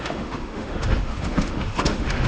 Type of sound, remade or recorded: remade